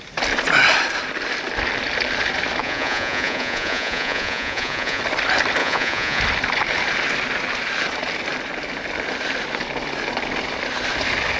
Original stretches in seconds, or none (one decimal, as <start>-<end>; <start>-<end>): 0.0-2.6; 5.0-5.6; 6.2-11.4